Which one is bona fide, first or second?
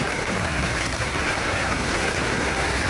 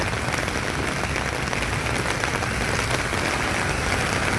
second